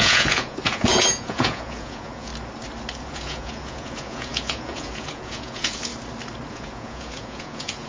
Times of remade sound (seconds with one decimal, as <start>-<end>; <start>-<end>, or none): 0.0-2.3; 3.0-5.9; 6.5-7.9